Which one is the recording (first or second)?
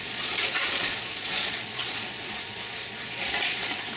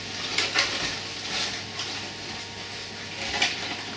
second